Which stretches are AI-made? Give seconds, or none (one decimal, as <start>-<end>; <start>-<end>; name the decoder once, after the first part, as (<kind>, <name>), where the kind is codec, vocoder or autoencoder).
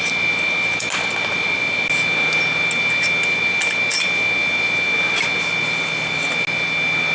none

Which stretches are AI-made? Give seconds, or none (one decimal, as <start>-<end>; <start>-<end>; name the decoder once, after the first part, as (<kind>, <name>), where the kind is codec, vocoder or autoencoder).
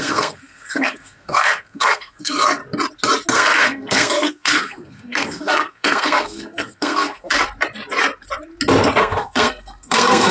0.0-2.6 (codec, SNAC); 3.3-7.3; 9.0-10.3